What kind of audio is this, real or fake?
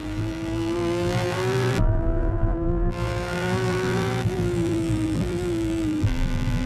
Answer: fake